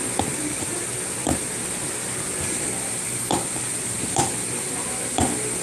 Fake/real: real